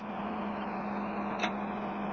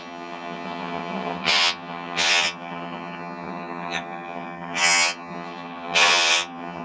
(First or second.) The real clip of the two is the first